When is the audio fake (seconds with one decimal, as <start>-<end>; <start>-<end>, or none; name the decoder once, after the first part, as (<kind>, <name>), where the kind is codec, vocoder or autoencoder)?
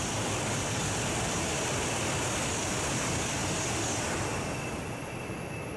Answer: none